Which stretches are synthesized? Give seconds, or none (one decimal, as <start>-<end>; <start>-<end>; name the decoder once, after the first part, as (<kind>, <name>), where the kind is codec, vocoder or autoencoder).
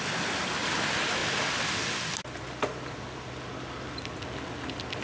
none